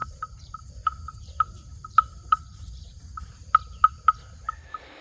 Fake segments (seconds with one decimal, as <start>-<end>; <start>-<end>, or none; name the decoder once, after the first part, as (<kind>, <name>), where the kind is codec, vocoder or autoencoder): 0.0-3.0 (vocoder, BigVGAN v2)